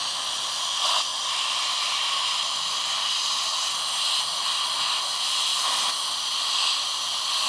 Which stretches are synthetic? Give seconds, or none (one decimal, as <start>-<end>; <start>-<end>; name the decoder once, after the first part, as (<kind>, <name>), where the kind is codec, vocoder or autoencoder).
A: 5.5-6.5 (vocoder, BigVGAN v2)